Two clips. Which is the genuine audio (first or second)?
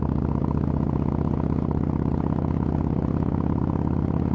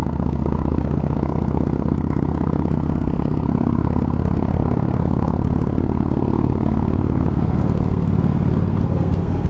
first